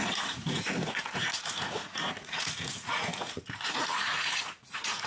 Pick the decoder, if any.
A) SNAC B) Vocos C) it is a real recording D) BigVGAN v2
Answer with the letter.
B